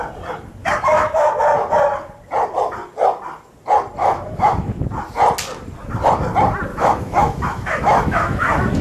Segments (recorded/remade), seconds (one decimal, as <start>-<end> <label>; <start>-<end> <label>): 0.0-0.6 recorded; 0.6-1.3 remade; 1.3-4.0 recorded; 4.0-4.8 remade; 4.8-6.7 recorded; 6.7-8.8 remade